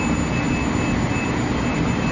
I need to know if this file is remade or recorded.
recorded